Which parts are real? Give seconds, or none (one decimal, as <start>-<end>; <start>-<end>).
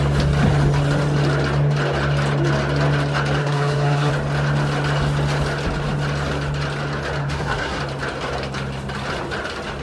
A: 0.0-3.4; 4.1-7.2; 7.8-9.8